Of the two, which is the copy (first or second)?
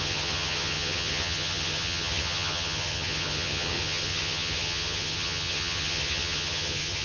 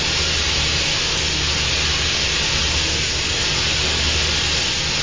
first